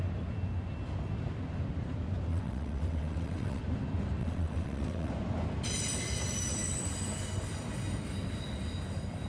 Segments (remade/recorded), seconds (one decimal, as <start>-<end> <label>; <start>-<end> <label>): 0.0-2.3 recorded; 2.3-3.6 remade; 3.6-4.2 recorded; 4.2-5.1 remade; 5.1-9.3 recorded